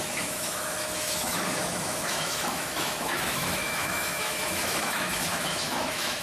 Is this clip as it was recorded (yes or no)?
no